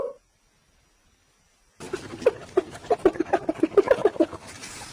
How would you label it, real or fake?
real